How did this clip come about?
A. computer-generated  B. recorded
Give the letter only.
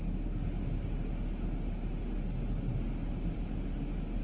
B